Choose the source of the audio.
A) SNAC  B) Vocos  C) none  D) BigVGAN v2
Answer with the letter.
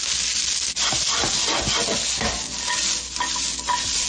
C